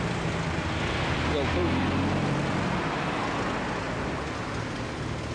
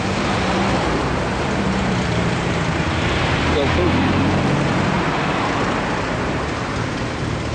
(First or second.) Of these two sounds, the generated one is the second